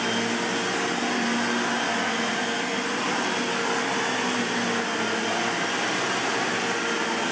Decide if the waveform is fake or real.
real